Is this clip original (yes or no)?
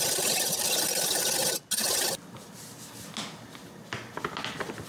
yes